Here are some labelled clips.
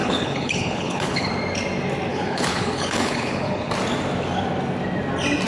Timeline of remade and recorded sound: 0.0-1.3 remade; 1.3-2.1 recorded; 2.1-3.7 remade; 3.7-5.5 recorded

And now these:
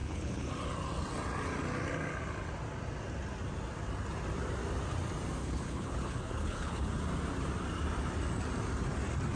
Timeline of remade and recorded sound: 0.0-0.5 remade; 0.5-5.4 recorded; 5.4-7.0 remade; 7.0-9.4 recorded

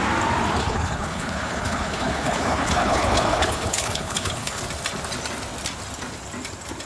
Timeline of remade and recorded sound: 0.0-0.6 recorded; 0.6-4.6 remade; 4.6-6.9 recorded

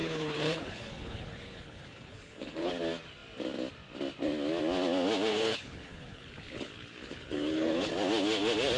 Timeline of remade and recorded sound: 0.0-2.7 remade; 2.7-5.3 recorded; 5.3-7.9 remade; 7.9-8.8 recorded

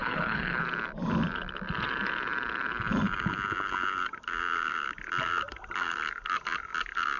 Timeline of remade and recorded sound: 0.0-0.6 remade; 0.6-7.2 recorded

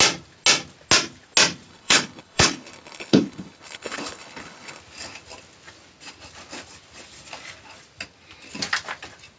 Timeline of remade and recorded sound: 0.0-1.7 recorded; 1.7-4.8 remade; 4.8-9.4 recorded